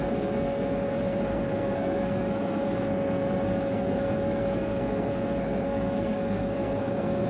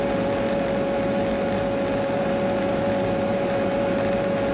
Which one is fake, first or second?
first